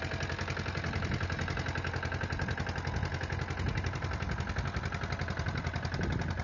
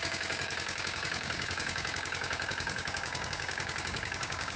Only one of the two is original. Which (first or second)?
first